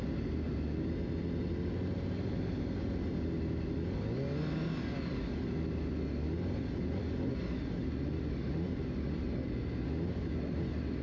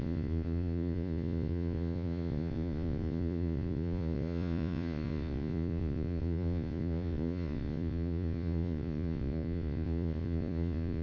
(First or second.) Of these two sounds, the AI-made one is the second